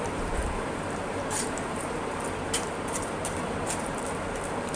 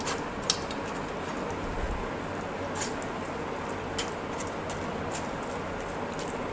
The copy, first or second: first